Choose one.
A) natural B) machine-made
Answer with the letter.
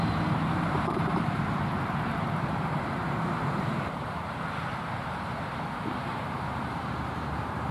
B